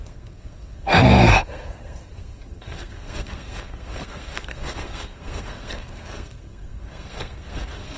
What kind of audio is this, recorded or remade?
remade